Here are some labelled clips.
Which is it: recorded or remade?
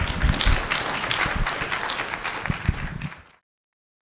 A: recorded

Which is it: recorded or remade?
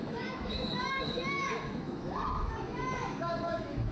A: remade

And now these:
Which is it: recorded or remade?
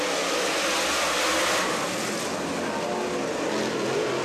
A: recorded